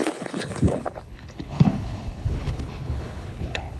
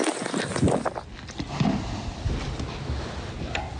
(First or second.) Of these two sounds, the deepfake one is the first